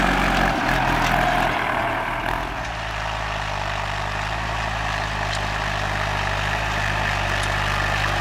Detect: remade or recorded recorded